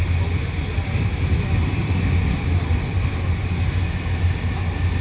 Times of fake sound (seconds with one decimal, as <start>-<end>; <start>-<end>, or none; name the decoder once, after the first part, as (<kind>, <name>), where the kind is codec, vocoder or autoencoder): none